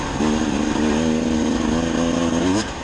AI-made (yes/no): no